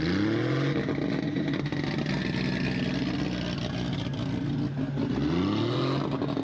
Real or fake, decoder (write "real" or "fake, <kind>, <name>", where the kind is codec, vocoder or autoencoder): real